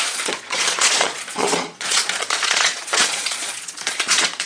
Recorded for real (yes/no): no